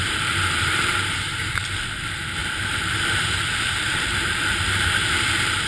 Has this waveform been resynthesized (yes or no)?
yes